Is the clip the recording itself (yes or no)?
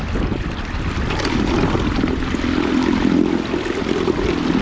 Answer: yes